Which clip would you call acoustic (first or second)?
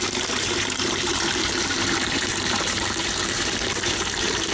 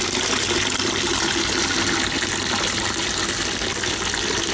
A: second